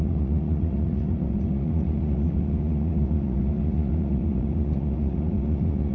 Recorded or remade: remade